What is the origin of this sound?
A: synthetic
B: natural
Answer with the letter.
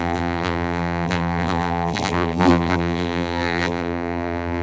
A